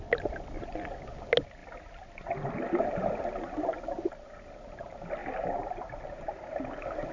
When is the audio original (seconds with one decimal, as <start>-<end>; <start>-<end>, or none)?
0.0-7.1